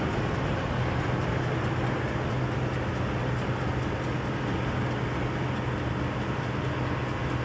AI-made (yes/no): no